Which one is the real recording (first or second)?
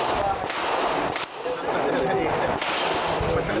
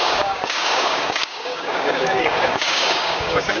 first